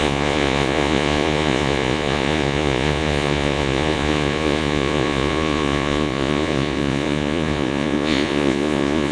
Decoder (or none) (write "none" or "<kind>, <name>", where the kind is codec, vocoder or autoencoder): vocoder, Vocos